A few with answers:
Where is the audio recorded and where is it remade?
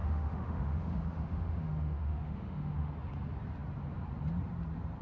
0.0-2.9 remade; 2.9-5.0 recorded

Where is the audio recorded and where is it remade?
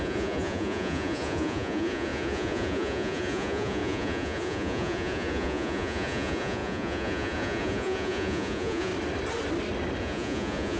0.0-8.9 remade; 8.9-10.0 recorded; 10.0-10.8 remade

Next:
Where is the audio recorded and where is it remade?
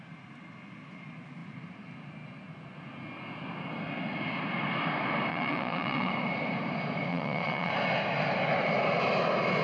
0.0-5.3 recorded; 5.3-6.1 remade; 6.1-7.1 recorded; 7.1-7.7 remade; 7.7-9.6 recorded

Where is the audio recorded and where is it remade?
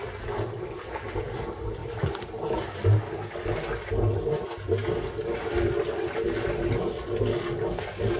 0.0-8.2 recorded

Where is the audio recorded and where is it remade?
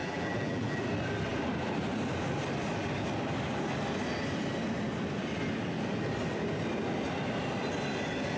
0.0-0.8 remade; 0.8-8.4 recorded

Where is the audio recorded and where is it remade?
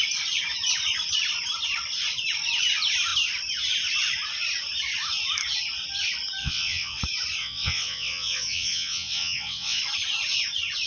0.0-6.4 recorded; 6.4-7.0 remade; 7.0-7.4 recorded; 7.4-9.8 remade; 9.8-10.9 recorded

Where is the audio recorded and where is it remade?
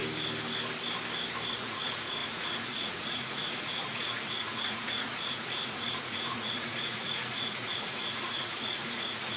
0.0-1.5 recorded; 1.5-9.4 remade